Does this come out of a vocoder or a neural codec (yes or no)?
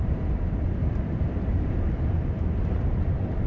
yes